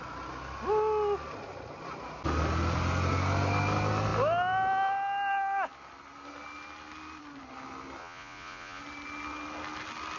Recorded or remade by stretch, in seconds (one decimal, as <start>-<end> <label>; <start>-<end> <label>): 0.0-8.0 recorded; 8.0-8.8 remade; 8.8-10.2 recorded

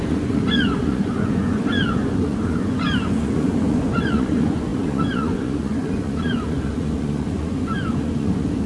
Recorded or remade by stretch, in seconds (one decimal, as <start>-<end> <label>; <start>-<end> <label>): 0.0-8.7 remade

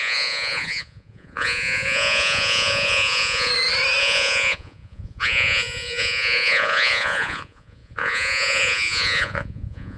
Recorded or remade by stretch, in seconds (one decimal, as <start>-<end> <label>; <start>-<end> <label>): 0.0-3.5 remade; 3.5-4.0 recorded; 4.0-10.0 remade

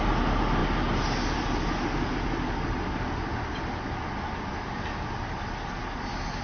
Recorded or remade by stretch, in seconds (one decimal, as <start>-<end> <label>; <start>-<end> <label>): 0.0-6.4 recorded

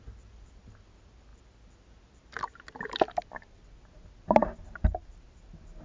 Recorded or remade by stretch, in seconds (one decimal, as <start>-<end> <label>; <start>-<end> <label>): 0.0-5.8 recorded

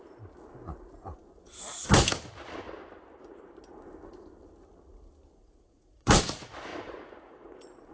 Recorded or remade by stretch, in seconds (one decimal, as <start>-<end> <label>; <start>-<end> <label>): 0.0-5.4 recorded; 5.4-6.1 remade; 6.1-6.7 recorded; 6.7-7.9 remade